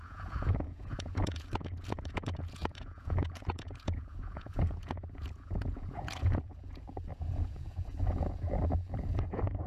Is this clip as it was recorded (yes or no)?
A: no